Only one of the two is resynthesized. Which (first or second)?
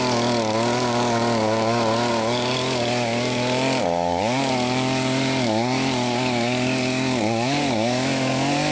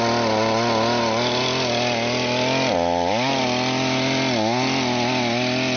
first